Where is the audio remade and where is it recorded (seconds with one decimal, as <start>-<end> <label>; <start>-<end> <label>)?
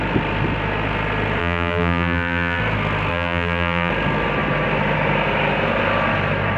0.0-1.4 recorded; 1.4-2.6 remade; 2.6-3.1 recorded; 3.1-3.9 remade; 3.9-6.6 recorded